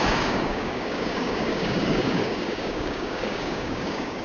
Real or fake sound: fake